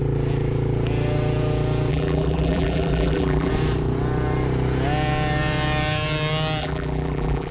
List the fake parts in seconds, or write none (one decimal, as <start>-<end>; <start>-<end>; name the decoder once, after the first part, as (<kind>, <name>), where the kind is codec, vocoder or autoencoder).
1.9-3.5 (vocoder, BigVGAN v2); 6.6-7.5